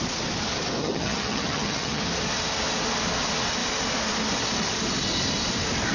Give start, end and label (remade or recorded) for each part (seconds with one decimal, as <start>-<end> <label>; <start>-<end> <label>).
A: 0.0-0.8 recorded; 0.8-2.0 remade; 2.0-5.9 recorded